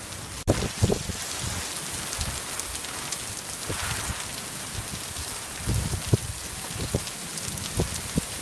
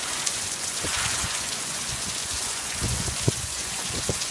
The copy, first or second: second